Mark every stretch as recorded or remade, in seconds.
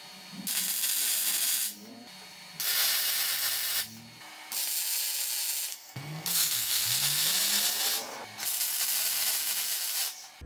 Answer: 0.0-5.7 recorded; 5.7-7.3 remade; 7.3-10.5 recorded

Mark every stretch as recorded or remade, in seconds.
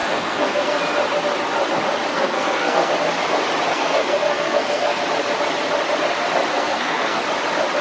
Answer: 0.0-0.8 remade; 0.8-2.1 recorded; 2.1-2.9 remade; 2.9-3.7 recorded; 3.7-5.0 remade; 5.0-6.5 recorded; 6.5-7.2 remade; 7.2-7.8 recorded